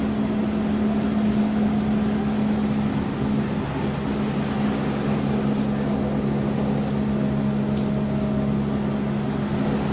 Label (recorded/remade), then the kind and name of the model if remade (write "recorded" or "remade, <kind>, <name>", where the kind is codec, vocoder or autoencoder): recorded